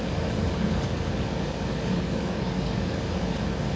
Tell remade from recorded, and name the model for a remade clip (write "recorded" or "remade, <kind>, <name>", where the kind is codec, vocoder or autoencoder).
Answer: remade, codec, DAC